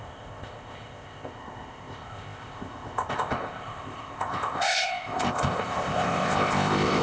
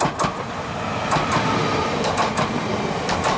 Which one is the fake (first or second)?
first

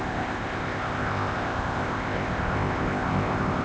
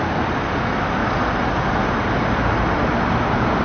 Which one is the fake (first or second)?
first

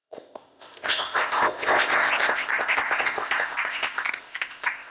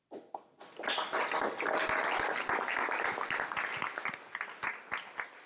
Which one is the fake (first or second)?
first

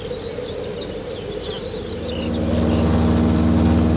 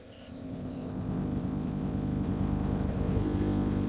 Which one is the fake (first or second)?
second